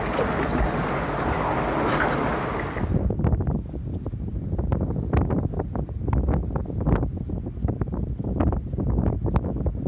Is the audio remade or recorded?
recorded